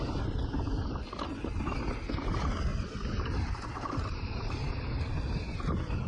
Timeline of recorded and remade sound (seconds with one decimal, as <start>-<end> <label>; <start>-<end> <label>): 0.0-2.7 recorded; 2.7-4.7 remade; 4.7-6.1 recorded